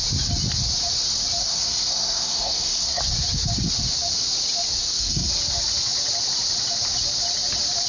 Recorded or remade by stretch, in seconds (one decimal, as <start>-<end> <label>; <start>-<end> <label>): 0.0-1.4 recorded; 1.4-3.0 remade; 3.0-4.8 recorded; 4.8-5.3 remade; 5.3-7.9 recorded